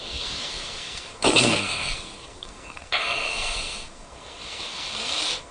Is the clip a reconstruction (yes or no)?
yes